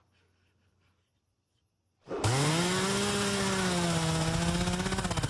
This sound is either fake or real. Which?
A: real